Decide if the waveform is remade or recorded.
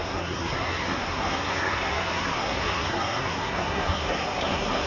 remade